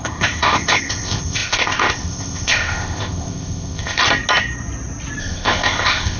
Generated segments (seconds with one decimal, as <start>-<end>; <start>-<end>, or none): 0.0-4.0; 5.2-6.2